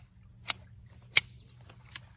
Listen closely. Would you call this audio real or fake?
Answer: real